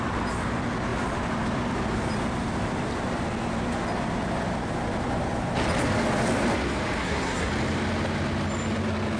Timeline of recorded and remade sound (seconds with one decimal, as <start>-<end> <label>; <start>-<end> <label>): 0.0-7.0 recorded; 7.0-7.5 remade; 7.5-9.2 recorded